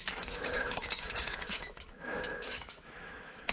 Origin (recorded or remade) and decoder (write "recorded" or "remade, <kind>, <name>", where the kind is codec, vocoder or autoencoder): remade, autoencoder, DAC-VAE